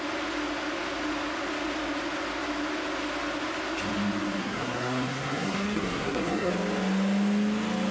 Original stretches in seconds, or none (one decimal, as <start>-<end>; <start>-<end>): 0.0-4.4; 6.5-7.9